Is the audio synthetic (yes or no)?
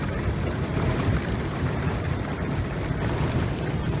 yes